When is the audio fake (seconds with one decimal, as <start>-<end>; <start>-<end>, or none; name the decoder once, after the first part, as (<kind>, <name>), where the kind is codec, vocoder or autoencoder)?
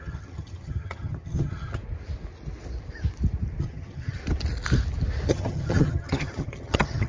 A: 0.0-1.8 (vocoder, HiFi-GAN); 3.6-4.2; 5.3-7.1